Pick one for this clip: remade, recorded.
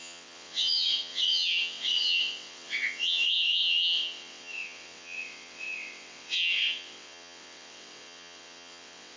remade